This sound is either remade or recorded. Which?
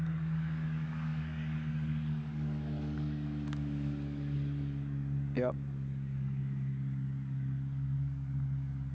remade